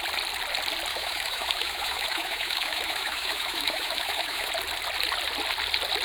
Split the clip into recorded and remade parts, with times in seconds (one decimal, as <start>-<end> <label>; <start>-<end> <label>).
0.0-0.9 recorded; 0.9-4.5 remade; 4.5-6.0 recorded